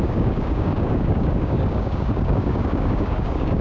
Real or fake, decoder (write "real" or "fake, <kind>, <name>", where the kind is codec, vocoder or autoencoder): fake, codec, DAC